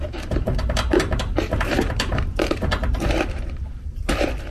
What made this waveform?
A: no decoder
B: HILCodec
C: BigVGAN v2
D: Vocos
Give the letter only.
C